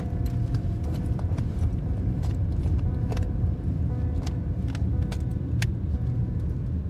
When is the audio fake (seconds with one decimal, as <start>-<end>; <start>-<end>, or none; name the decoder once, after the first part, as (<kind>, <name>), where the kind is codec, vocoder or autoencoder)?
0.4-3.8 (vocoder, BigVGAN v2)